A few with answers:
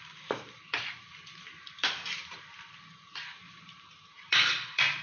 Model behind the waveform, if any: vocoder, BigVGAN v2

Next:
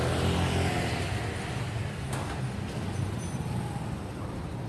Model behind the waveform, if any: none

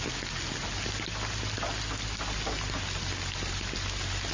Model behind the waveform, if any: none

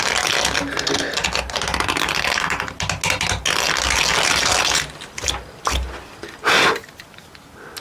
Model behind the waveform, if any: none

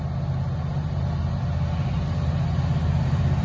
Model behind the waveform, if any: none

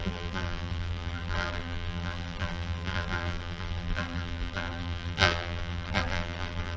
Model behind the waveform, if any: vocoder, BigVGAN v2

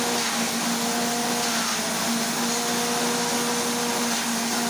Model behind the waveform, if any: none